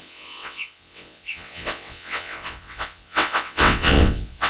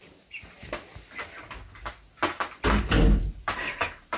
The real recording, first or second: second